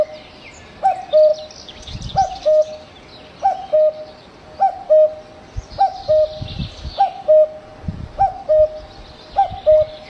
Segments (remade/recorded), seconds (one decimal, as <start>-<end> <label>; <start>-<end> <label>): 0.0-10.1 recorded